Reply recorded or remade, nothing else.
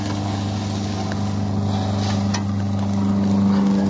recorded